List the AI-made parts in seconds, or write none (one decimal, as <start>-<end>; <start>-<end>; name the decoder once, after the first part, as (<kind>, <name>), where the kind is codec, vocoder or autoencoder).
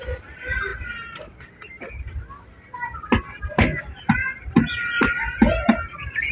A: 0.7-3.1 (vocoder, BigVGAN v2)